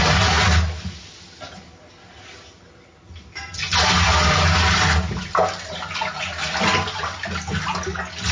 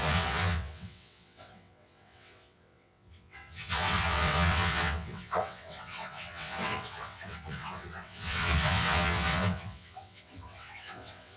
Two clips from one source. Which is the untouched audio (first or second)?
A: first